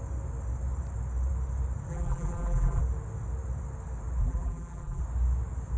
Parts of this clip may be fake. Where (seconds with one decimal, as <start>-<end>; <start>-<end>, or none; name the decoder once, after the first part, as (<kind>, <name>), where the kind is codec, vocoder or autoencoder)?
1.9-2.8 (vocoder, BigVGAN v2); 4.2-5.0